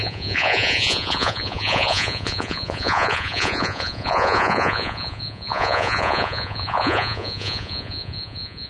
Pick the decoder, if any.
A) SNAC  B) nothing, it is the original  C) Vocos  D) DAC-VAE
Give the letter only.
C